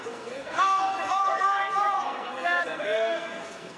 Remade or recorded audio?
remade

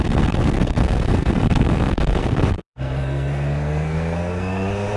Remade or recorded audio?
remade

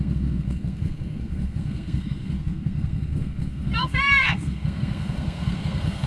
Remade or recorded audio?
remade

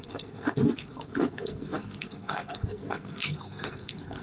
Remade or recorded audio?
remade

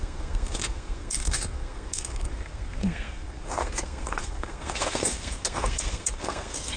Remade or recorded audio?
remade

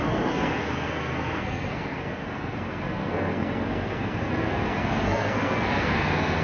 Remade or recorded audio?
remade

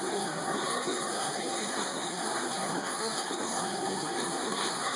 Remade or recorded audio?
remade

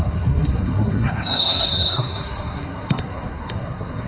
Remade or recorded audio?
remade